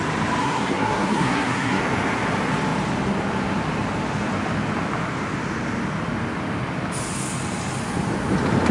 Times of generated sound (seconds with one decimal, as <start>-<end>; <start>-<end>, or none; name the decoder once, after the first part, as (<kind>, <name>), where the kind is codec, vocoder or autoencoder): 0.4-1.8 (codec, SNAC)